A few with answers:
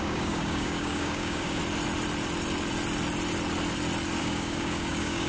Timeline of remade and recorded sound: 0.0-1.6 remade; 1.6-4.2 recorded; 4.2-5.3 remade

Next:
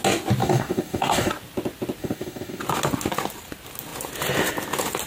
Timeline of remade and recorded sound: 0.0-0.4 recorded; 0.4-1.3 remade; 1.3-2.0 recorded; 2.0-2.6 remade; 2.6-5.1 recorded

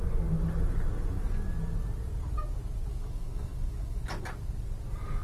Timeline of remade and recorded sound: 0.0-2.9 recorded; 2.9-4.0 remade; 4.0-5.2 recorded

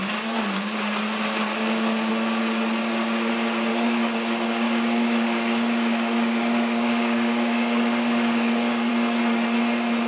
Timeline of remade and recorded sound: 0.0-2.8 recorded; 2.8-3.3 remade; 3.3-3.7 recorded; 3.7-8.9 remade; 8.9-10.1 recorded

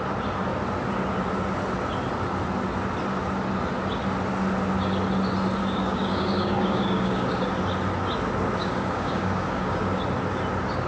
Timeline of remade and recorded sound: 0.0-5.6 recorded; 5.6-7.4 remade; 7.4-8.6 recorded; 8.6-10.0 remade; 10.0-10.9 recorded

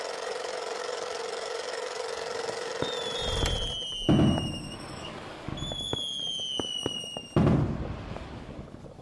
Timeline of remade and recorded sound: 0.0-2.7 remade; 2.7-4.9 recorded; 4.9-5.5 remade; 5.5-8.1 recorded; 8.1-9.0 remade

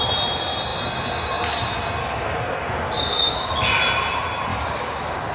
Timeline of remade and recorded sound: 0.0-2.0 recorded; 2.0-3.5 remade; 3.5-4.5 recorded; 4.5-5.3 remade

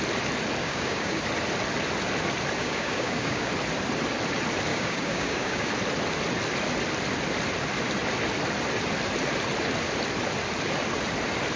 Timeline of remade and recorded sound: 0.0-0.6 recorded; 0.6-1.2 remade; 1.2-2.6 recorded; 2.6-3.5 remade; 3.5-4.7 recorded; 4.7-5.7 remade; 5.7-11.6 recorded